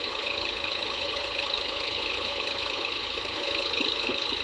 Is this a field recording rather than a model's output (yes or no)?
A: no